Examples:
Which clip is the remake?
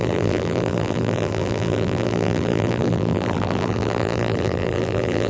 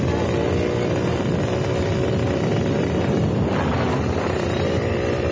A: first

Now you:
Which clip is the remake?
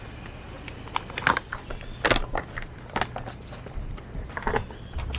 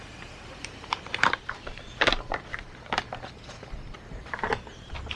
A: second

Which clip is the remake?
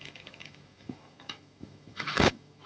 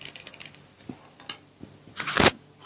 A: first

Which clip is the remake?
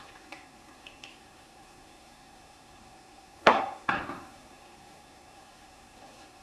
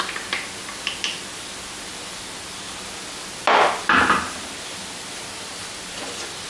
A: first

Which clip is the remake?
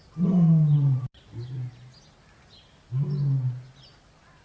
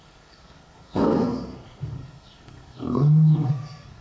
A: second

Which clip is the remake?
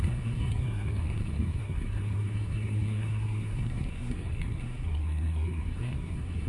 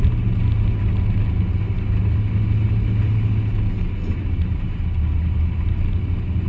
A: first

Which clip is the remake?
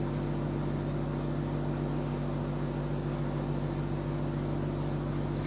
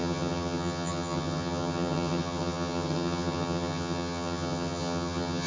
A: second